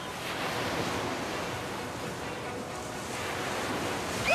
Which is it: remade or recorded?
recorded